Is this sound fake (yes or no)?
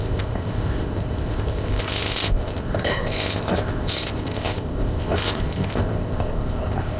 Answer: yes